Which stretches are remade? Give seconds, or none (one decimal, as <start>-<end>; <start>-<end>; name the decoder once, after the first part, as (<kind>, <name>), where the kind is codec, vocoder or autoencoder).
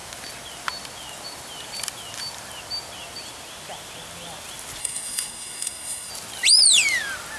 4.8-6.1 (codec, SNAC)